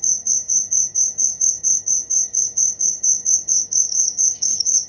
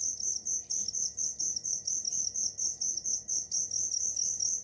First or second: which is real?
second